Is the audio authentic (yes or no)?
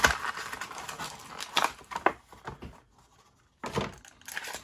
yes